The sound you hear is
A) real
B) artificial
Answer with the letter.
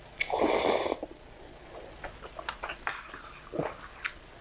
A